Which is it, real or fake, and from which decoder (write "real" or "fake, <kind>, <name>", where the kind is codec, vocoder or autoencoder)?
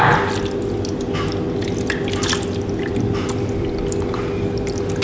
real